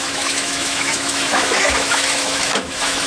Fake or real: fake